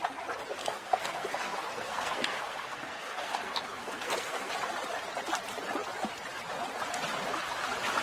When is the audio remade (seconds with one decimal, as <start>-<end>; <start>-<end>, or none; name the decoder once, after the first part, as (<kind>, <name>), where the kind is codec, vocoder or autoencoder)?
0.6-4.5 (codec, SNAC)